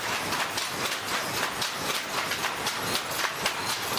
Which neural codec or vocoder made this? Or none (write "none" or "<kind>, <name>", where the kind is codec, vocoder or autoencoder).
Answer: none